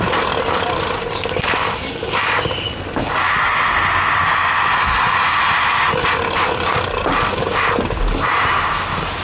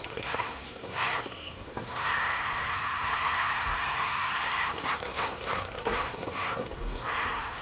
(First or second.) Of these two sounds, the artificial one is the second